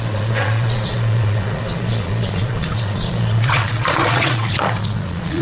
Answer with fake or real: fake